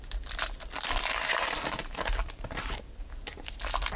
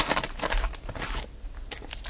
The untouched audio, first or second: second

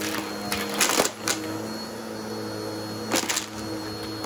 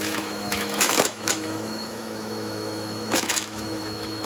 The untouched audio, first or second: first